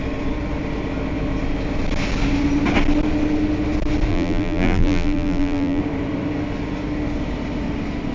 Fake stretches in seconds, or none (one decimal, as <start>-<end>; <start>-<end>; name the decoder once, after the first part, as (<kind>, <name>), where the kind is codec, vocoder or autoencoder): 4.1-5.8 (vocoder, BigVGAN v2)